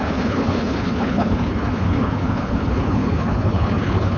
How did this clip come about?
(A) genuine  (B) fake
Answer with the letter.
B